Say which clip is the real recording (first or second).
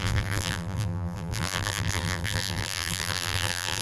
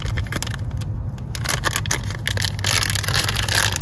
second